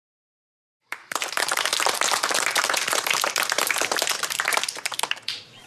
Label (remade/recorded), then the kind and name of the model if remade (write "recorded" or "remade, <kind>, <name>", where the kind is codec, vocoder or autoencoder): remade, vocoder, BigVGAN v2